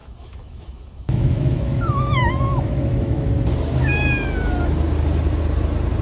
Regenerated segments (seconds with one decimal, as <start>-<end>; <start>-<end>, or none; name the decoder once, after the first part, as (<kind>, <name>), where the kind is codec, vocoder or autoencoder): 0.0-3.3 (autoencoder, DAC-VAE)